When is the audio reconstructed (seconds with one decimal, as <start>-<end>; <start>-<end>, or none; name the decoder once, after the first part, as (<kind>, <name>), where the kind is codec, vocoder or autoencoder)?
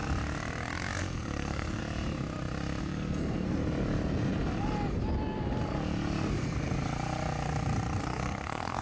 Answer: 1.0-1.8 (codec, SNAC); 2.8-3.6; 8.0-8.8